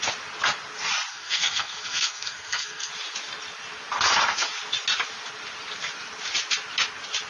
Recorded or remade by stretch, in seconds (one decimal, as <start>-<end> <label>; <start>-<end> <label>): 0.0-1.1 recorded; 1.1-2.9 remade; 2.9-7.3 recorded